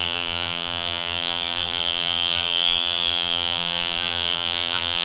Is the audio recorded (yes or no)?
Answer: no